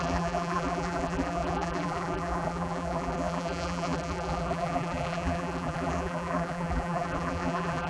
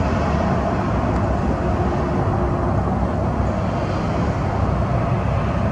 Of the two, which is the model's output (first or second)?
first